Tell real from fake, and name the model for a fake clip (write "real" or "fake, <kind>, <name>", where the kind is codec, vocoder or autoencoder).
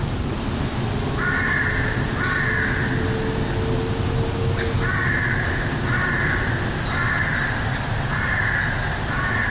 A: real